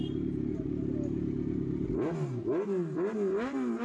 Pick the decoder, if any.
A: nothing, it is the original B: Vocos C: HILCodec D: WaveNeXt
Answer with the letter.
A